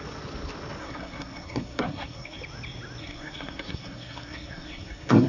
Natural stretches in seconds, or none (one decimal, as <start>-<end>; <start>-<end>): 0.0-0.8; 2.4-3.0